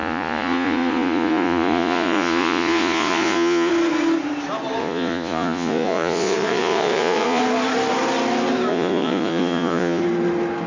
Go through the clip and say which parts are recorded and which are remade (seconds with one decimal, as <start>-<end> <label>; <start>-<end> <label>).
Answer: 0.0-3.7 remade; 3.7-4.8 recorded; 4.8-7.4 remade; 7.4-8.7 recorded; 8.7-10.0 remade; 10.0-10.7 recorded